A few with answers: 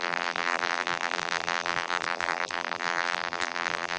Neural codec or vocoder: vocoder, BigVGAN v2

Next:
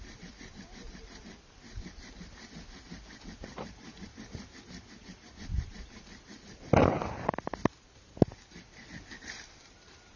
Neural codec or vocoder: none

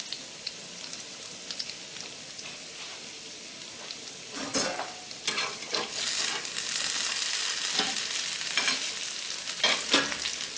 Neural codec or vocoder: none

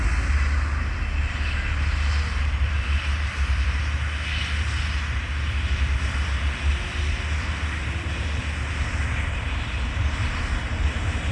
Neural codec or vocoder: none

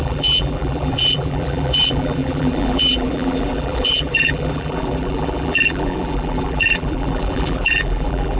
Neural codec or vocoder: vocoder, BigVGAN v2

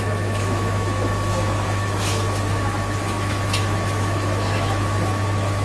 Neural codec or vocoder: autoencoder, DAC-VAE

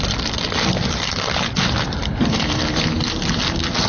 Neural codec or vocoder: none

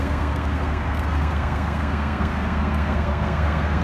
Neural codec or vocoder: codec, SNAC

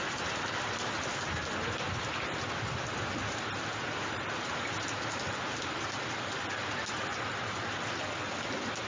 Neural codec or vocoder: none